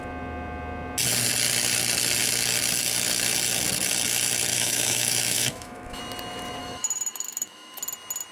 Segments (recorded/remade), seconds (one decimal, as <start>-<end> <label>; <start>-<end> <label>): 0.0-4.5 recorded; 4.5-6.0 remade; 6.0-6.6 recorded; 6.6-7.8 remade; 7.8-8.3 recorded